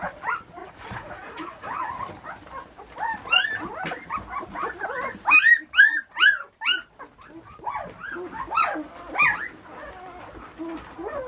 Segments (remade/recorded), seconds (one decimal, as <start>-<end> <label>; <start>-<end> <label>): 0.0-0.6 recorded; 0.6-2.0 remade; 2.0-11.3 recorded